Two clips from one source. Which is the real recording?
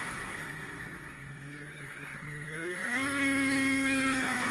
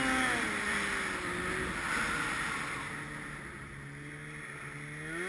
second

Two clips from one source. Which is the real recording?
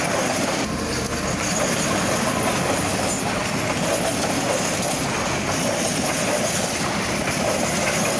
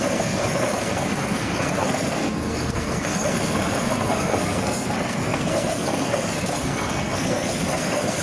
first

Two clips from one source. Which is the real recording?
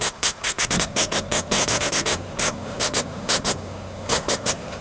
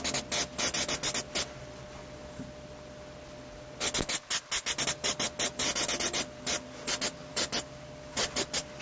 second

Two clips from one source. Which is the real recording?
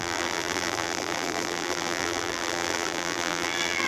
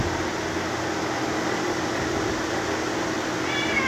second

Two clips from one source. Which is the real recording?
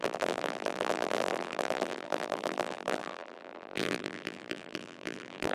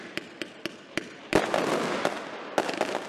second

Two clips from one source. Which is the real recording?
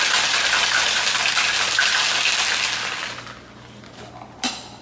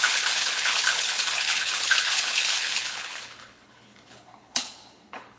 first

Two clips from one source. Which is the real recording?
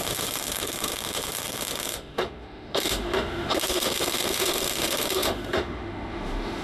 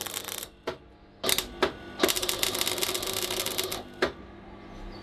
second